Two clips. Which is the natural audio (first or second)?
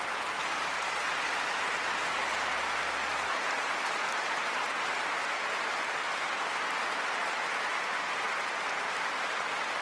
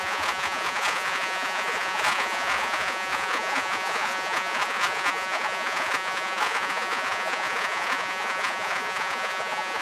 first